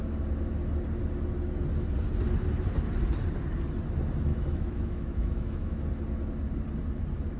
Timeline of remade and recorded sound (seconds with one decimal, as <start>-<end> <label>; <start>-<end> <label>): 0.0-4.3 recorded; 4.3-5.8 remade; 5.8-7.4 recorded